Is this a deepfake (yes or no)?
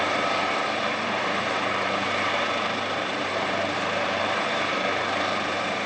yes